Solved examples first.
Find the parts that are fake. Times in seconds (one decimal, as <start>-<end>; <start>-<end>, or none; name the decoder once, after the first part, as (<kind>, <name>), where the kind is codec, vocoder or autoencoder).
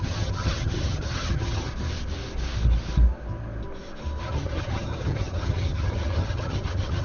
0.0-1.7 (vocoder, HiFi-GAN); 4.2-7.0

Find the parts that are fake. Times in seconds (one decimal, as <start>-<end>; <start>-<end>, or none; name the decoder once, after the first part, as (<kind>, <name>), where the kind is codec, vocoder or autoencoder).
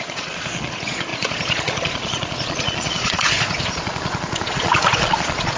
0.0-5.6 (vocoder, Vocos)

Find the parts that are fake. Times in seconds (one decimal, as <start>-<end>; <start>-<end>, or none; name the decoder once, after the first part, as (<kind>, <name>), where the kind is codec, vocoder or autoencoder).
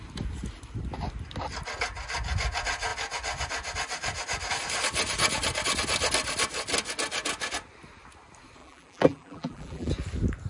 8.6-9.9 (vocoder, BigVGAN v2)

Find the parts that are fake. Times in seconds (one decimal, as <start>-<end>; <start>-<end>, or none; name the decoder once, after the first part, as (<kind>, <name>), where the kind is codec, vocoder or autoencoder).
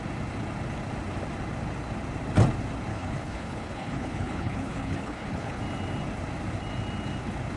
2.9-5.6 (codec, HILCodec)